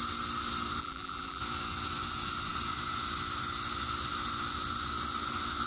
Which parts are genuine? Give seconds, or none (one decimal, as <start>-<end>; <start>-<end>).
0.0-0.8; 1.4-5.7

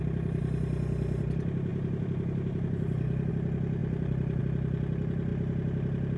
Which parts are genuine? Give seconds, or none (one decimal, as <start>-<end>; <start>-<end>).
0.0-1.7; 3.3-3.8; 4.4-6.2

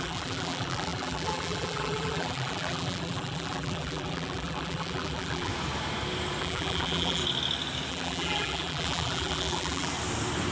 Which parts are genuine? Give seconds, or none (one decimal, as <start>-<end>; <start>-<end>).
5.5-6.4; 7.2-7.9; 9.9-10.5

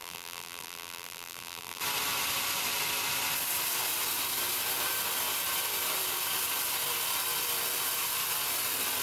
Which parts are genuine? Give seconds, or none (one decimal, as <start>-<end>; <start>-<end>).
1.8-9.0